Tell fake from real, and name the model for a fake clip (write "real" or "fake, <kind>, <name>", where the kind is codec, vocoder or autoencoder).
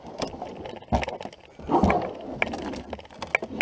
real